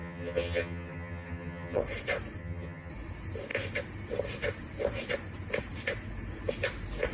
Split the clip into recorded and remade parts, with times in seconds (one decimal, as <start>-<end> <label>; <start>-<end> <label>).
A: 0.0-1.8 remade; 1.8-2.4 recorded; 2.4-2.9 remade; 2.9-7.1 recorded